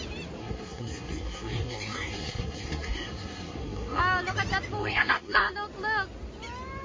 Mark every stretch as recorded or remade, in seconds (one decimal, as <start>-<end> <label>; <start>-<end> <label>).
0.0-0.4 recorded; 0.4-4.0 remade; 4.0-4.8 recorded; 4.8-5.5 remade; 5.5-6.8 recorded